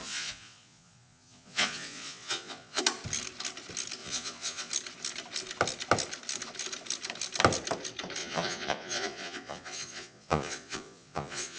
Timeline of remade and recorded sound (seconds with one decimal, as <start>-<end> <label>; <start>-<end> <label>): 0.0-2.8 remade; 2.8-4.0 recorded; 4.0-4.7 remade; 4.7-8.2 recorded; 8.2-11.6 remade